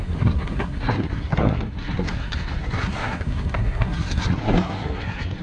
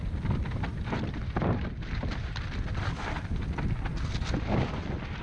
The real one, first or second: second